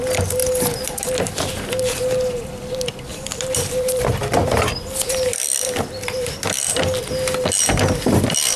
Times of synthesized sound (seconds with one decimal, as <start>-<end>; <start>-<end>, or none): 3.1-6.7